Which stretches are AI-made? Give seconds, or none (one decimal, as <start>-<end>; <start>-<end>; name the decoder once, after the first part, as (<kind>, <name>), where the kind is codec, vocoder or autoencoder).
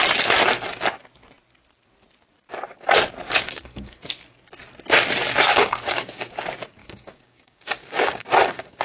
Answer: 3.3-4.0 (codec, DAC); 5.5-6.3; 6.8-8.8